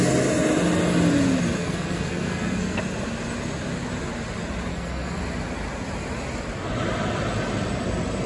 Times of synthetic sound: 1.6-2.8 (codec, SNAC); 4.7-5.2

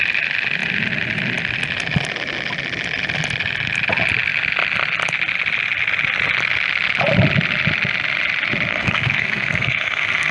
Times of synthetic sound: 8.7-10.3 (codec, SNAC)